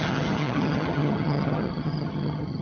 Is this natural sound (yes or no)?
no